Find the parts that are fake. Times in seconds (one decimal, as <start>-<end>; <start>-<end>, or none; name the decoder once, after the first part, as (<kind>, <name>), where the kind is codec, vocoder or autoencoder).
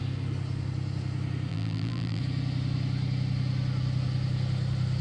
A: 1.5-2.2 (vocoder, BigVGAN v2)